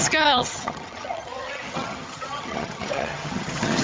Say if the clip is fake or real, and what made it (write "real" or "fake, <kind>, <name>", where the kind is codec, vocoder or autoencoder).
fake, vocoder, HiFi-GAN